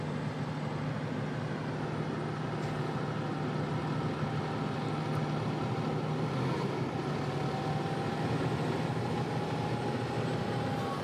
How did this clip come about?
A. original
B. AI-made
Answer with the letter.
A